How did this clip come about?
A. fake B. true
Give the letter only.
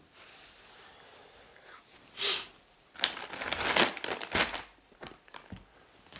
B